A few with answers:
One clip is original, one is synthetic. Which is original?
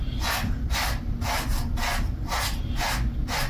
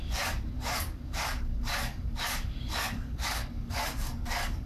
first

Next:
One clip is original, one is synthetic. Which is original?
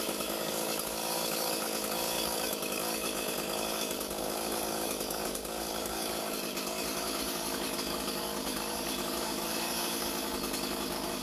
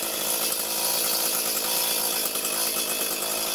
second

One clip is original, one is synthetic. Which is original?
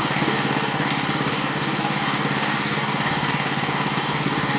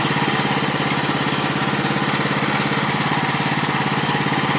second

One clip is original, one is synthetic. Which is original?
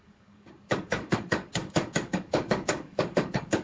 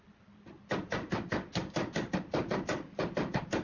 second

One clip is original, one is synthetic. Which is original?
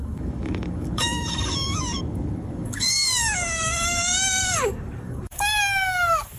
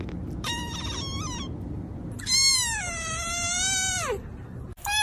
second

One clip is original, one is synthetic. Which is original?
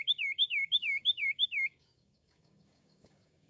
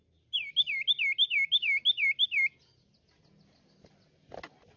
second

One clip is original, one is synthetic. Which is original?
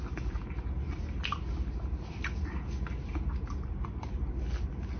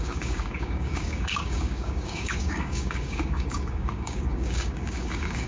first